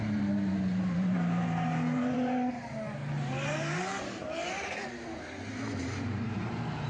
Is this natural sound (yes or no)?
no